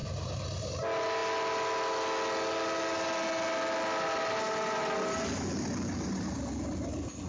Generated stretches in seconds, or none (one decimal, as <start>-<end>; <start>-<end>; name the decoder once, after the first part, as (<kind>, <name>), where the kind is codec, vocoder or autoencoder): none